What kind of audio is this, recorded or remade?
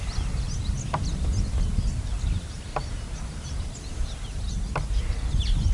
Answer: recorded